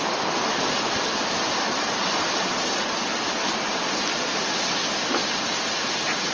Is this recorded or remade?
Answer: recorded